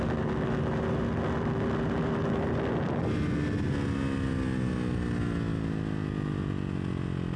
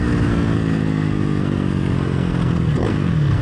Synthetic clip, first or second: second